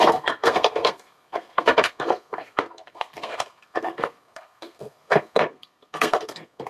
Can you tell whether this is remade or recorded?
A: remade